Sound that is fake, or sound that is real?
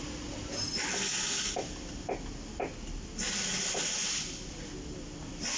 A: real